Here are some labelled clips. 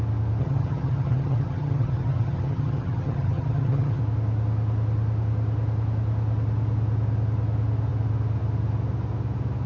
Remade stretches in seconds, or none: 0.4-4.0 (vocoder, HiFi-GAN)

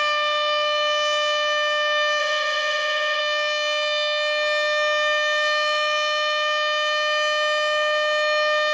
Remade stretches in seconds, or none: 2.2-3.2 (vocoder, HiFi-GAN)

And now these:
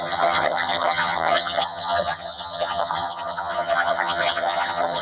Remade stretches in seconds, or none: 0.0-5.0 (vocoder, HiFi-GAN)

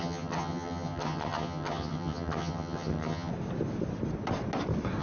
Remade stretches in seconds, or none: 0.0-3.3 (vocoder, HiFi-GAN)